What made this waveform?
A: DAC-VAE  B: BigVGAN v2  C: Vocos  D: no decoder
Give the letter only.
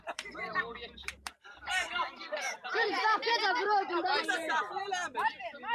B